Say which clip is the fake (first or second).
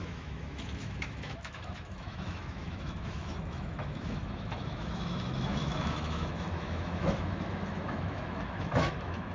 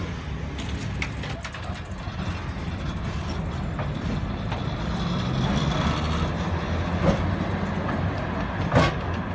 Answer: first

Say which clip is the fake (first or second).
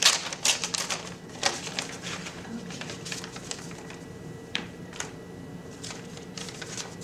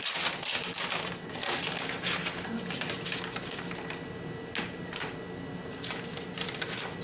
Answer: first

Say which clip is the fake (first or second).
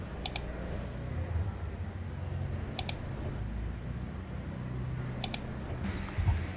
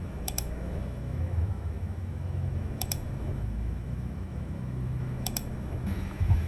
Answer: second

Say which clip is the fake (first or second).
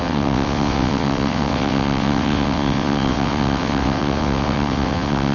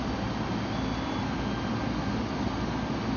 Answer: first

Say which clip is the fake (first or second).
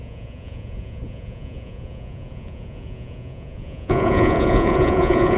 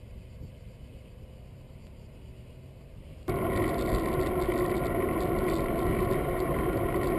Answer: first